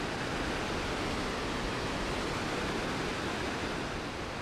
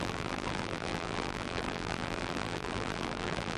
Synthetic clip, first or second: second